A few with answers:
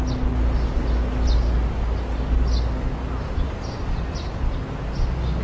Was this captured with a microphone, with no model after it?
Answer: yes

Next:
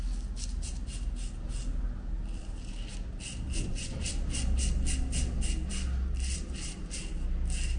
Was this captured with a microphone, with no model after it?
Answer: yes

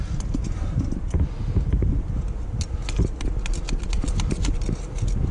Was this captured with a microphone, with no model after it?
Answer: yes